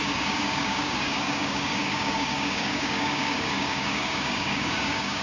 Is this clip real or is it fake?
fake